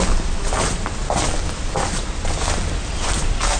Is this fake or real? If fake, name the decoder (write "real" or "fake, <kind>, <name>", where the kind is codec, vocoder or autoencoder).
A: real